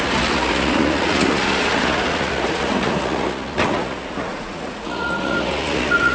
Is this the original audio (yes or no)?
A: no